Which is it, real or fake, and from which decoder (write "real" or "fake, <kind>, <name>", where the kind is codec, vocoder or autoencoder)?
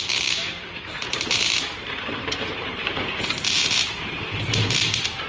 fake, vocoder, BigVGAN v2